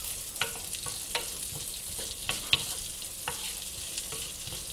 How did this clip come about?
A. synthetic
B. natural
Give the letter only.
B